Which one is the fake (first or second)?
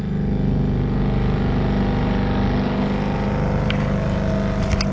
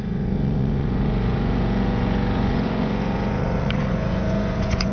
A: second